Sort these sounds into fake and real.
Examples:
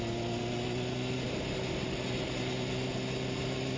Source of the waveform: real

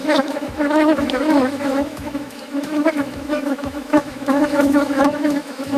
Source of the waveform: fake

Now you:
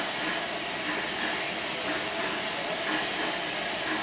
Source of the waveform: real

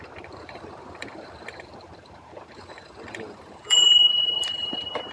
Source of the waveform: fake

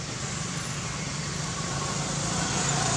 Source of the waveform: real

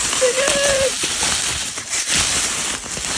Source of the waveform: real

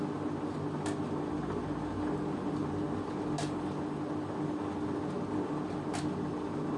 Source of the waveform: real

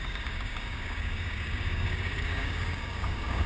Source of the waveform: fake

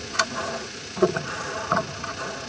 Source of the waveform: fake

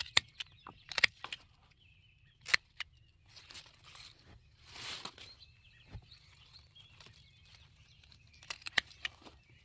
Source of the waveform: real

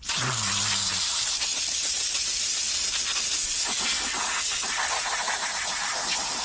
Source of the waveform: real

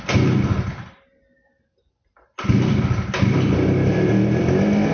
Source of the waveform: real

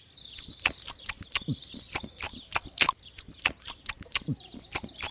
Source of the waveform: fake